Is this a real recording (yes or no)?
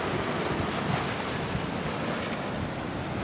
yes